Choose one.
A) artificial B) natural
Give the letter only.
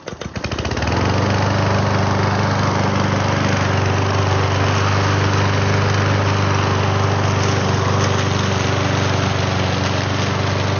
B